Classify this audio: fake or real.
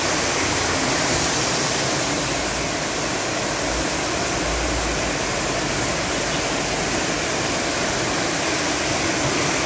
real